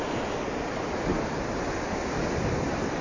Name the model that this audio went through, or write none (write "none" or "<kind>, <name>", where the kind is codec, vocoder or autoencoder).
none